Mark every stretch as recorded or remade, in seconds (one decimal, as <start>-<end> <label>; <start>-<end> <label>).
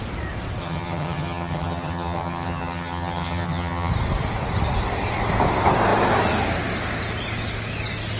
0.0-0.6 recorded; 0.6-3.9 remade; 3.9-8.2 recorded